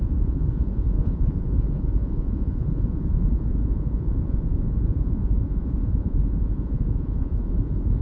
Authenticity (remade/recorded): remade